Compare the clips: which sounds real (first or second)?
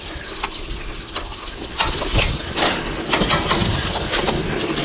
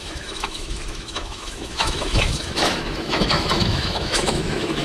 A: first